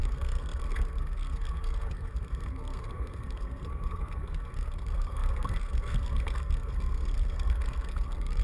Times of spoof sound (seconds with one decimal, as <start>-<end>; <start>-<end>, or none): 0.0-8.4